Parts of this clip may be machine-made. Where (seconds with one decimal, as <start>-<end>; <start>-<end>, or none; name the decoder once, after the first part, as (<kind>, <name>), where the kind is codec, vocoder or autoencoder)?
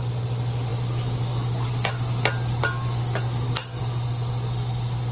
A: none